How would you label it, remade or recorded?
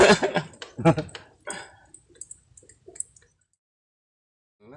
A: recorded